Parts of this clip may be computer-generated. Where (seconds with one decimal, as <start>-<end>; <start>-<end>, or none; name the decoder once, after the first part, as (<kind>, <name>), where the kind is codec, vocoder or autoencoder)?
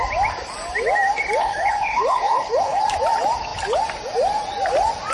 1.4-2.8 (codec, HILCodec)